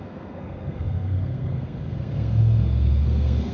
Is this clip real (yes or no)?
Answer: no